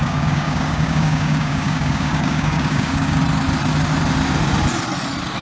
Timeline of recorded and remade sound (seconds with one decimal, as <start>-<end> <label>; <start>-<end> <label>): 0.0-3.2 remade; 3.2-5.4 recorded